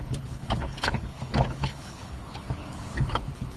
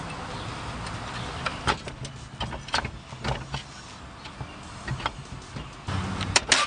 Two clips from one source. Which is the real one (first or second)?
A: second